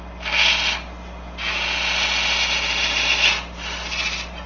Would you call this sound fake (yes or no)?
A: no